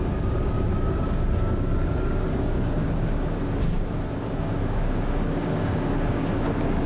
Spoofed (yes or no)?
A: yes